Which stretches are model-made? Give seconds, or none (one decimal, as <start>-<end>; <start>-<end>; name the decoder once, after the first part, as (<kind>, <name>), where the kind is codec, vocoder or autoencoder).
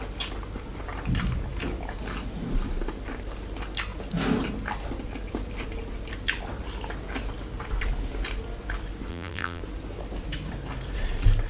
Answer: 9.1-9.6 (vocoder, BigVGAN v2)